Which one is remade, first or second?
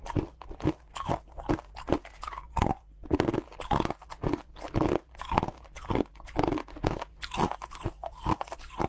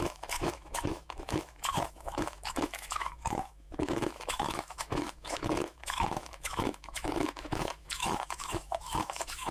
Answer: second